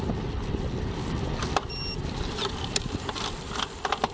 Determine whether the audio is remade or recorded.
recorded